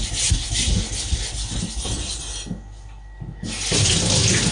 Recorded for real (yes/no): yes